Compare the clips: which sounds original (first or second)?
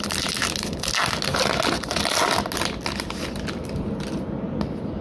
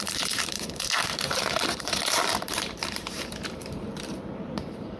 first